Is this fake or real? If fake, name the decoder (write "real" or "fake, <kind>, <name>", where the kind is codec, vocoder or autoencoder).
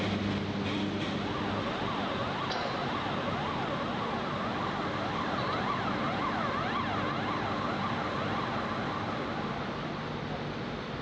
real